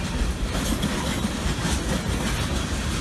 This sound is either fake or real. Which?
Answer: real